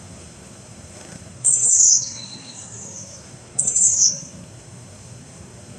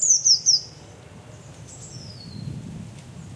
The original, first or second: second